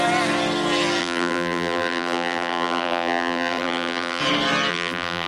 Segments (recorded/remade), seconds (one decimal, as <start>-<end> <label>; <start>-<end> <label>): 0.0-1.0 recorded; 1.0-4.2 remade; 4.2-4.7 recorded; 4.7-5.3 remade